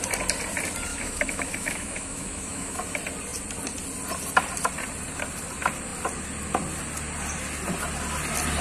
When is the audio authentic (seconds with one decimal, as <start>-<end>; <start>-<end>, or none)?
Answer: 0.0-0.9; 2.8-8.6